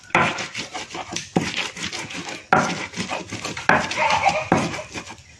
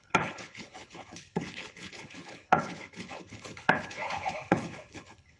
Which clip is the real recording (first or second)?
first